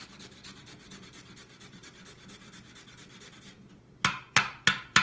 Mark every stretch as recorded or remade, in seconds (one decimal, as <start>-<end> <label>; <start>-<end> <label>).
0.0-0.4 remade; 0.4-3.4 recorded; 3.4-5.0 remade